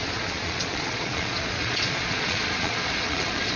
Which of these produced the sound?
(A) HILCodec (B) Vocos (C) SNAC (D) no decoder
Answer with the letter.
B